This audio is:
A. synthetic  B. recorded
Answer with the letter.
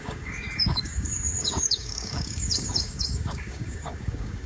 A